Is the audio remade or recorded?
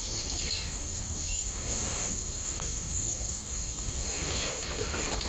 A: remade